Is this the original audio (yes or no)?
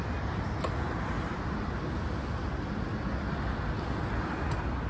yes